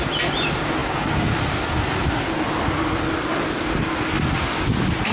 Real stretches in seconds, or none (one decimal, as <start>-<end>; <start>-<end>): 0.0-5.1